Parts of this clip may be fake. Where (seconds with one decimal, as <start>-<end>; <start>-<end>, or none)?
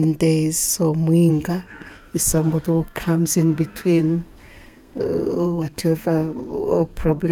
1.3-7.3